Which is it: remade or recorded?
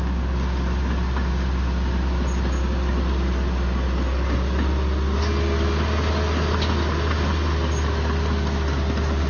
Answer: recorded